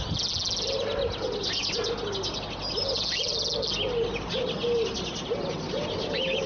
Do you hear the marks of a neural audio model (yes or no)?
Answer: no